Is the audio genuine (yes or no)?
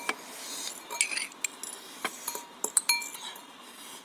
yes